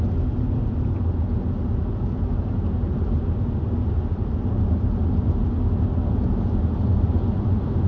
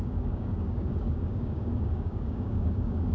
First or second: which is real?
first